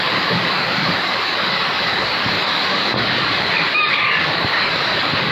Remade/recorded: remade